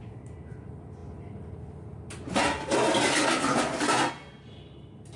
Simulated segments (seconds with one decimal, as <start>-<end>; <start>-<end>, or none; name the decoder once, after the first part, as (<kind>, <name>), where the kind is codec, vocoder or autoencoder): none